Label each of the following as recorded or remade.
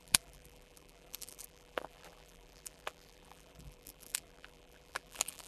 remade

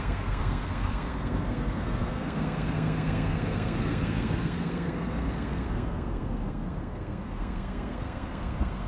remade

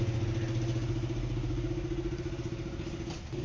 recorded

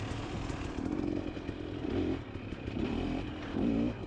remade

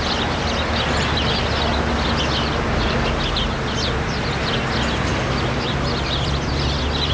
recorded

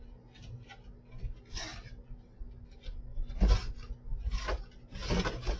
recorded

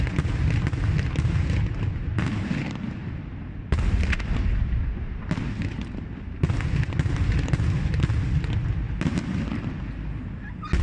recorded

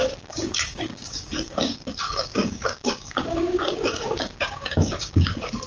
remade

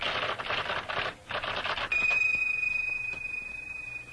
recorded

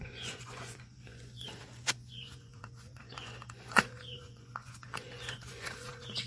remade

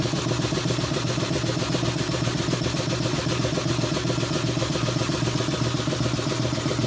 recorded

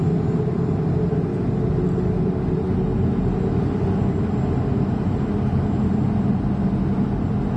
recorded